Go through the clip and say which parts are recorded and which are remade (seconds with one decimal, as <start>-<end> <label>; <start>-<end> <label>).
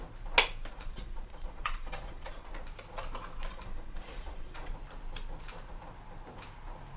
0.0-0.7 recorded; 0.7-2.5 remade; 2.5-3.5 recorded; 3.5-4.7 remade; 4.7-7.0 recorded